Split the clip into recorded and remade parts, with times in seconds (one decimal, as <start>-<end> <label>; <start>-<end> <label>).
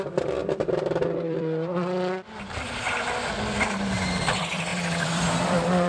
0.0-0.4 recorded; 0.4-3.8 remade; 3.8-4.7 recorded; 4.7-5.9 remade